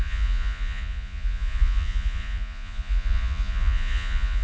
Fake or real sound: fake